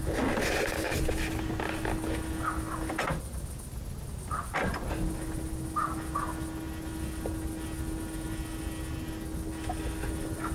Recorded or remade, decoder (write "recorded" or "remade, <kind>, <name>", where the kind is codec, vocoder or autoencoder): recorded